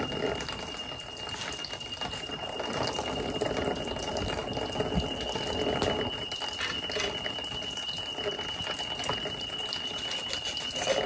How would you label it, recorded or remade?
recorded